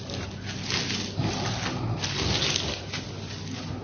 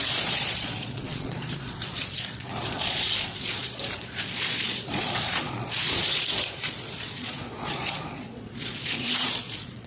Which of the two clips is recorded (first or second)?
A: first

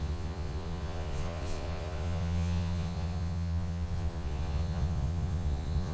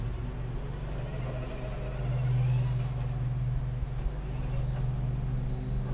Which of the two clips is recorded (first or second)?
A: second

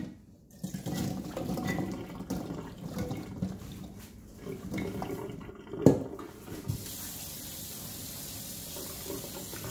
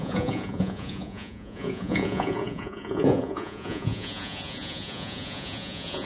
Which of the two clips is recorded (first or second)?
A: first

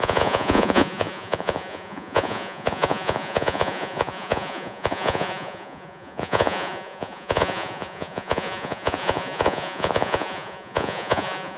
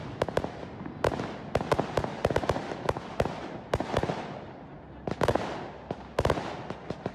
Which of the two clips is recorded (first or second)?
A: second